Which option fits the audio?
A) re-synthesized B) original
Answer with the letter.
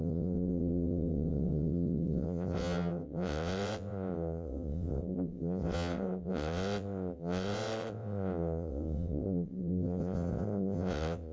A